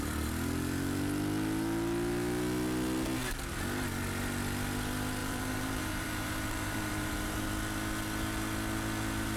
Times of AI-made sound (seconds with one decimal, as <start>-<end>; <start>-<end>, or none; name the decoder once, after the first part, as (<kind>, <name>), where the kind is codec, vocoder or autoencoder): 5.2-7.5 (vocoder, BigVGAN v2)